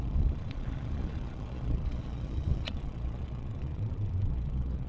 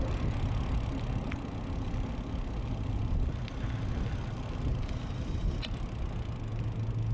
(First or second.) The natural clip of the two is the second